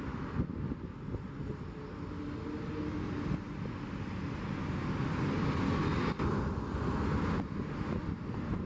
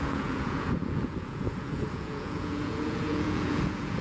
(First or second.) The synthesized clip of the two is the second